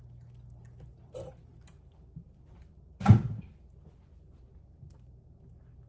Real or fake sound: real